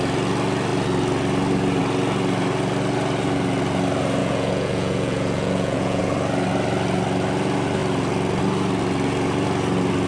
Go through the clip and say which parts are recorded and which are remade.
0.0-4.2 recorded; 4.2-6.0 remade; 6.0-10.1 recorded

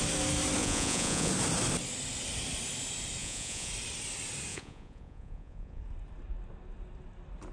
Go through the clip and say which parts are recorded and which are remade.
0.0-0.6 recorded; 0.6-1.3 remade; 1.3-3.2 recorded; 3.2-3.7 remade; 3.7-4.5 recorded; 4.5-5.8 remade; 5.8-7.5 recorded

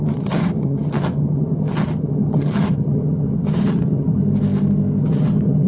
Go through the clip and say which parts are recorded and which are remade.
0.0-4.2 remade; 4.2-5.0 recorded; 5.0-5.7 remade

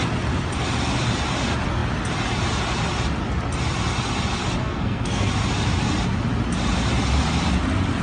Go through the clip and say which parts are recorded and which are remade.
0.0-4.6 recorded; 4.6-5.3 remade; 5.3-8.0 recorded

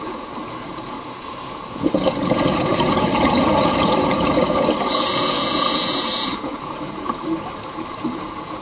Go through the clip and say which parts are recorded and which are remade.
0.0-7.2 remade; 7.2-7.9 recorded; 7.9-8.6 remade

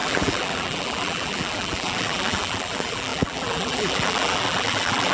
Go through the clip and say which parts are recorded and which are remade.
0.0-5.1 remade

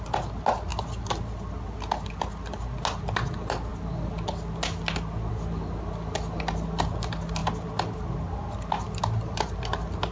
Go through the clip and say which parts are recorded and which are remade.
0.0-10.1 recorded